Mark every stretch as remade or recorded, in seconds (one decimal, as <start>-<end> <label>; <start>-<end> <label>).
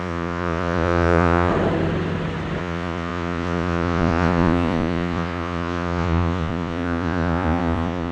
0.0-1.5 remade; 1.5-2.6 recorded; 2.6-8.1 remade